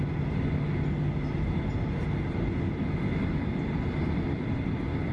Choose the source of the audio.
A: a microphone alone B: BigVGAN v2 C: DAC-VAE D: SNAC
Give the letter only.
A